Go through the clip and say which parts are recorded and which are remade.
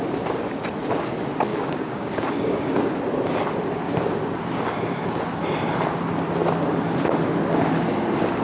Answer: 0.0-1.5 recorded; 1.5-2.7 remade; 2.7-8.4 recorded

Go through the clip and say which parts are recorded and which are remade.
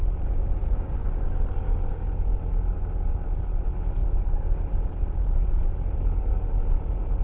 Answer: 0.0-7.2 recorded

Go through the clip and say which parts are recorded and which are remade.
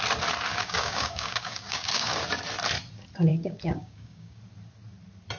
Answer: 0.0-0.5 recorded; 0.5-2.2 remade; 2.2-3.3 recorded; 3.3-4.4 remade; 4.4-5.4 recorded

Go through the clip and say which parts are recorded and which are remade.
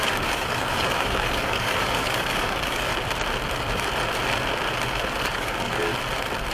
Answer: 0.0-2.9 remade; 2.9-5.2 recorded; 5.2-5.9 remade; 5.9-6.5 recorded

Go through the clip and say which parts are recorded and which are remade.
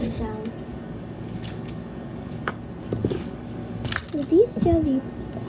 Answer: 0.0-0.7 recorded; 0.7-2.6 remade; 2.6-3.0 recorded; 3.0-3.9 remade; 3.9-5.5 recorded